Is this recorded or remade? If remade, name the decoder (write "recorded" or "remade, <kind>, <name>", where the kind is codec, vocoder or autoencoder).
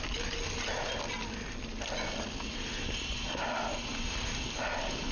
recorded